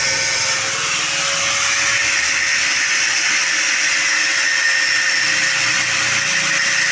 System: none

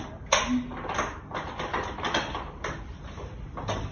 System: none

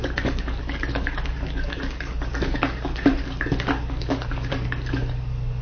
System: codec, DAC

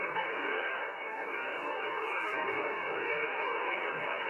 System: codec, DAC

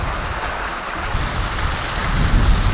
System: none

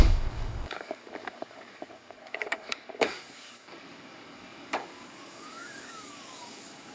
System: codec, DAC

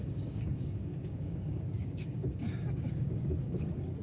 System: codec, DAC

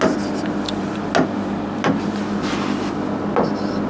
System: none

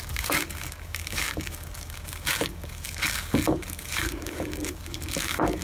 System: codec, DAC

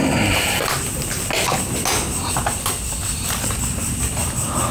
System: none